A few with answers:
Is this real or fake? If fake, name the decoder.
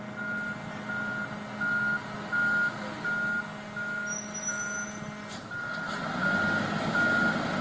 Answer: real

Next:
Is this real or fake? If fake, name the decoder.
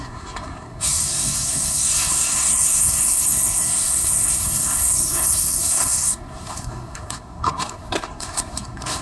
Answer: fake, codec, SNAC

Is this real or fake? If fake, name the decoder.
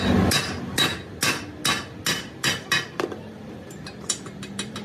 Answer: real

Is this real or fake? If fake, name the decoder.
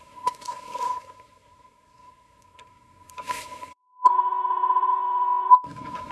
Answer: fake, codec, SNAC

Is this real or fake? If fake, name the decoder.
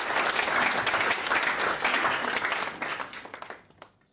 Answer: real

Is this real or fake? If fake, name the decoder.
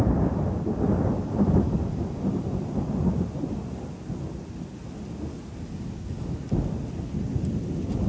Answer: real